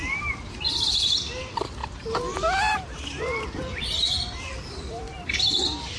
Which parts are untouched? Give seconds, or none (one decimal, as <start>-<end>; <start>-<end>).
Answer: none